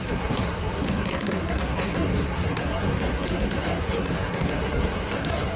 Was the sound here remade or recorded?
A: remade